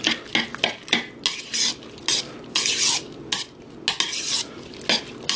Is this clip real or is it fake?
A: real